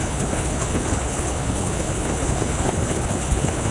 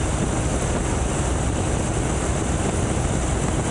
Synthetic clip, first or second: first